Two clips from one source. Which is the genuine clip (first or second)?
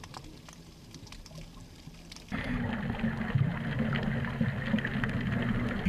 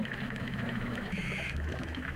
first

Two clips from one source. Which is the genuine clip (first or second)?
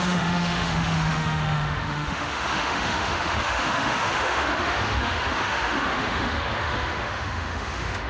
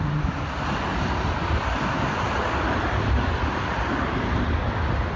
second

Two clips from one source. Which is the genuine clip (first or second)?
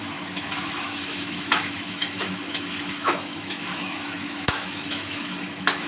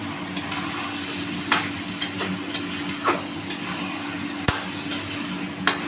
second